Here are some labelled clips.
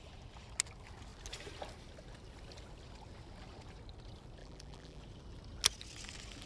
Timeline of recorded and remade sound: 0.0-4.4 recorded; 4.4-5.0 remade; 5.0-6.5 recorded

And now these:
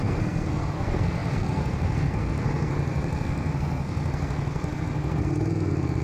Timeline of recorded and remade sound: 0.0-6.0 remade

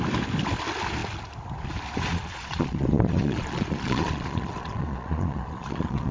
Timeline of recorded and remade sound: 0.0-2.1 recorded; 2.1-6.1 remade

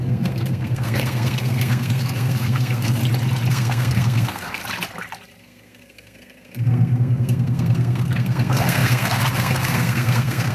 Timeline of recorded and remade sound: 0.0-3.0 remade; 3.0-3.5 recorded; 3.5-4.6 remade; 4.6-5.4 recorded; 5.4-10.5 remade

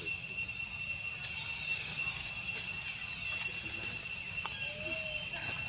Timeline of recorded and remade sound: 0.0-1.7 recorded; 1.7-2.3 remade; 2.3-5.7 recorded